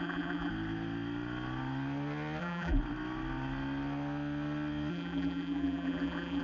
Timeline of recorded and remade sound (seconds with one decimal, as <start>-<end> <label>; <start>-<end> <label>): 0.0-0.5 remade; 0.5-2.4 recorded; 2.4-2.8 remade; 2.8-4.9 recorded; 4.9-6.4 remade